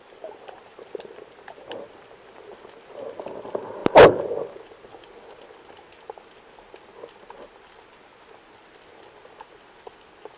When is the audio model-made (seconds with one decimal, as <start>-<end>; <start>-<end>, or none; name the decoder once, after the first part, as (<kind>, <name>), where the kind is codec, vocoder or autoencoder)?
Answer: none